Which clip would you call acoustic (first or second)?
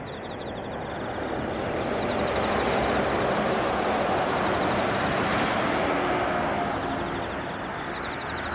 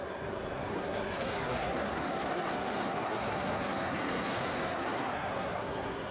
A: first